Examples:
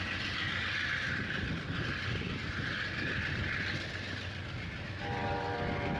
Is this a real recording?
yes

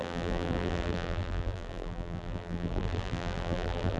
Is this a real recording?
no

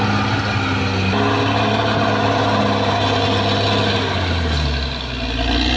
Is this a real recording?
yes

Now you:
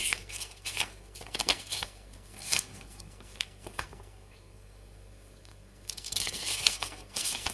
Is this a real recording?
no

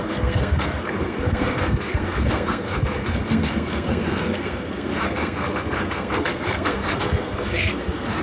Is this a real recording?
no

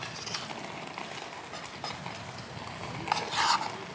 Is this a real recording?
yes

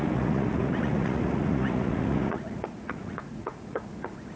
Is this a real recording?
no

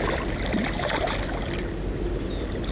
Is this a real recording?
yes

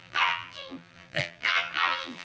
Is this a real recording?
no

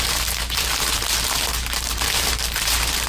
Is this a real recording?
no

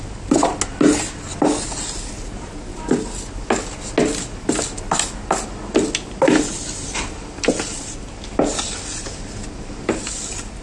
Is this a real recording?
yes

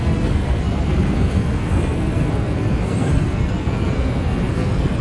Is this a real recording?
no